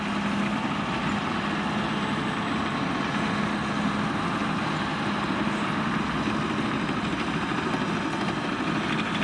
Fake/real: real